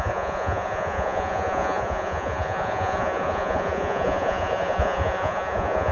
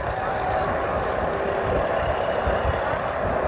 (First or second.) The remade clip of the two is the first